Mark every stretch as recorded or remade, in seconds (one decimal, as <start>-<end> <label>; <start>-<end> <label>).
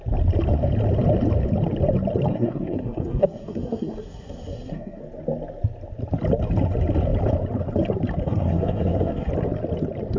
0.0-2.3 recorded; 2.3-5.0 remade; 5.0-8.2 recorded; 8.2-9.3 remade; 9.3-10.2 recorded